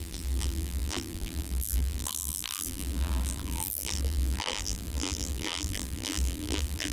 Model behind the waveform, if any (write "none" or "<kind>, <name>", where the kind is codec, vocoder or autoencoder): vocoder, BigVGAN v2